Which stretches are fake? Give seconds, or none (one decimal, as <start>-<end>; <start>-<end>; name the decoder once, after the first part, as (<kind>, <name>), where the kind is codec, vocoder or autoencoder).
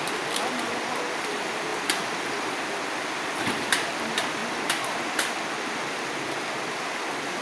0.0-1.7 (vocoder, BigVGAN v2); 3.0-4.4; 6.7-7.4